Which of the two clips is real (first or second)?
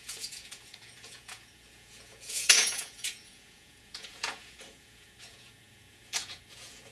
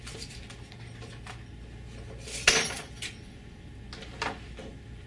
second